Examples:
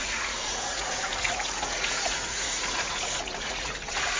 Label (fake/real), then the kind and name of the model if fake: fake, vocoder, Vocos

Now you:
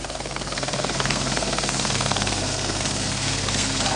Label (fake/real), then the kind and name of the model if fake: fake, codec, SNAC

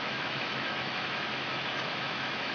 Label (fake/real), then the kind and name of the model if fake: fake, autoencoder, DAC-VAE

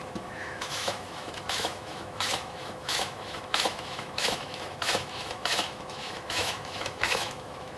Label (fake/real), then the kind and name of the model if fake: fake, autoencoder, DAC-VAE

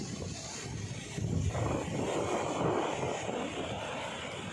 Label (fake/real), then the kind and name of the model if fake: real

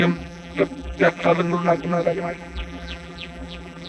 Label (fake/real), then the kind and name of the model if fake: fake, vocoder, BigVGAN v2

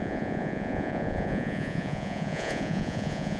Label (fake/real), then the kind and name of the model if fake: fake, vocoder, Vocos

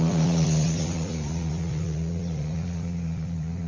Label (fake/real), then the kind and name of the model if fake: fake, vocoder, Vocos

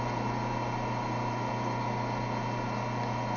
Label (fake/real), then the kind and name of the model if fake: real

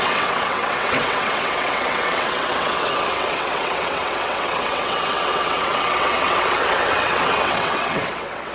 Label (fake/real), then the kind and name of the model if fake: fake, vocoder, WaveNeXt